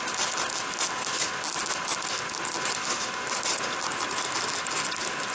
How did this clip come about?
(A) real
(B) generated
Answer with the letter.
A